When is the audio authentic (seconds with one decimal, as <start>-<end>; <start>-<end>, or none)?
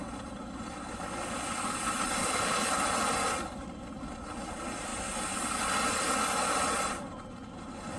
0.0-2.2; 2.8-8.0